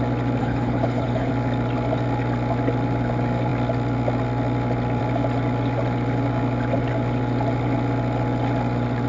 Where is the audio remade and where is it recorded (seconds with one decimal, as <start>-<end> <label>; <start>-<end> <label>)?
0.0-0.4 recorded; 0.4-1.3 remade; 1.3-9.1 recorded